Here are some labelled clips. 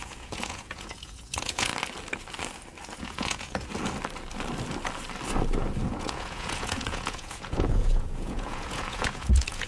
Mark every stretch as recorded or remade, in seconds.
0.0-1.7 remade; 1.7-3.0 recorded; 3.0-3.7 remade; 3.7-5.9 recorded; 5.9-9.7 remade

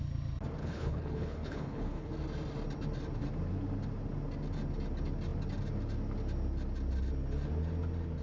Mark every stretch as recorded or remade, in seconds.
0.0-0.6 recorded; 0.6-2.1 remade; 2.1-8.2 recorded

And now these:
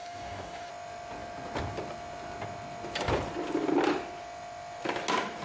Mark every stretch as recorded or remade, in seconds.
0.0-0.7 remade; 0.7-5.4 recorded

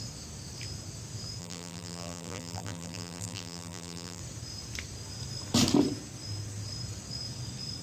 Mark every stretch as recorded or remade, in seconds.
0.0-1.4 recorded; 1.4-4.2 remade; 4.2-7.8 recorded